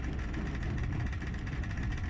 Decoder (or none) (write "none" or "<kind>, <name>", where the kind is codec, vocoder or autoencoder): none